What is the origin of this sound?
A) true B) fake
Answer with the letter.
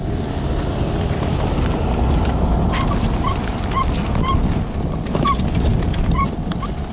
A